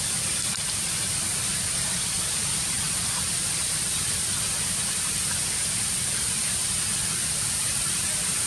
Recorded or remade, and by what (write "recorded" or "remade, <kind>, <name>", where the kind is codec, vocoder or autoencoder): recorded